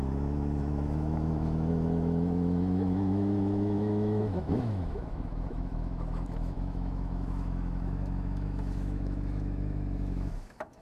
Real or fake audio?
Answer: fake